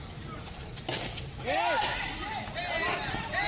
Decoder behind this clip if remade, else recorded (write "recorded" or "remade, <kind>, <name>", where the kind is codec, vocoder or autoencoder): recorded